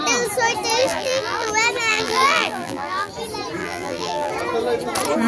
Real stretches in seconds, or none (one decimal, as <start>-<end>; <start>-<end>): 0.0-0.8; 1.5-1.9; 3.1-3.6; 4.3-5.3